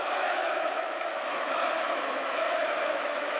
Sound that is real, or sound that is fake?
fake